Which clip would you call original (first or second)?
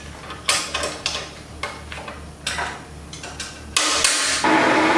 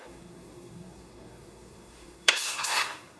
first